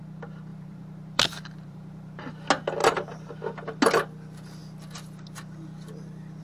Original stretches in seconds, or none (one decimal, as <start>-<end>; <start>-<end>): 0.0-0.5; 2.3-2.8; 3.3-6.4